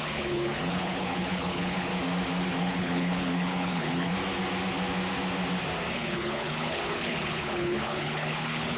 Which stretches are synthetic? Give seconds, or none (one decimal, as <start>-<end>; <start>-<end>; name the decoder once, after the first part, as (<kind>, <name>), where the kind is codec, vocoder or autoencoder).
0.0-1.9 (codec, HILCodec); 2.6-4.1; 5.9-8.8